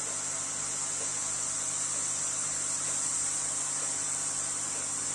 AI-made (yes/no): no